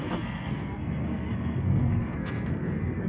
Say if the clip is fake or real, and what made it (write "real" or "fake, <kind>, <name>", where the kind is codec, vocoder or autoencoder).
fake, codec, SNAC